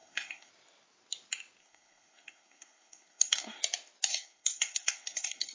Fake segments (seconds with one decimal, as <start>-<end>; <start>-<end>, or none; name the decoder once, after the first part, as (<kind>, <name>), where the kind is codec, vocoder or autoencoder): 0.0-0.5 (codec, SNAC); 1.6-3.6; 4.1-5.5